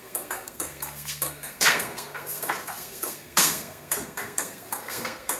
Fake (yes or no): yes